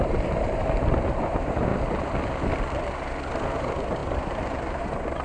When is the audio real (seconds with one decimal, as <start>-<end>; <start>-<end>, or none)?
1.7-3.6